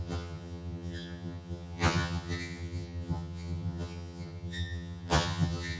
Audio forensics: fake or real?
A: fake